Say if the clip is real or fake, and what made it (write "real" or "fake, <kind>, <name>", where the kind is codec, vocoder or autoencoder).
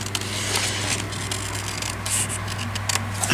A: real